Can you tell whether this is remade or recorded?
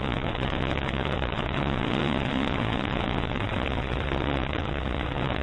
remade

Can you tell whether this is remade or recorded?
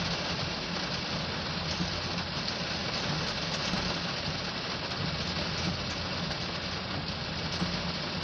recorded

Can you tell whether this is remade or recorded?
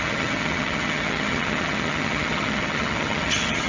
remade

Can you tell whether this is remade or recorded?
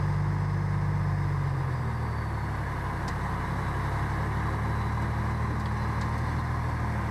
recorded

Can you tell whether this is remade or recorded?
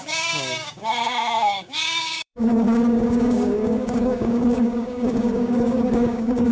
remade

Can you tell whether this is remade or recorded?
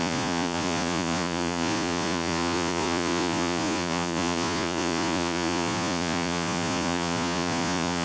remade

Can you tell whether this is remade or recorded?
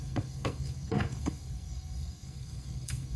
remade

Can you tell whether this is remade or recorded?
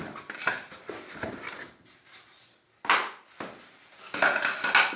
recorded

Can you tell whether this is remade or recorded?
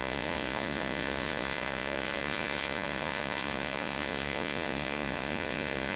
remade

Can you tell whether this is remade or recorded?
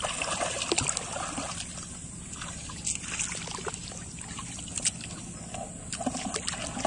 recorded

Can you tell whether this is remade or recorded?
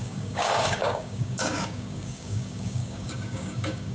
remade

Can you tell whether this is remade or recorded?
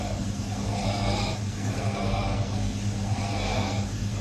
remade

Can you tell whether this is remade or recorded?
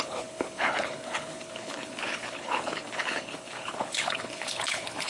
remade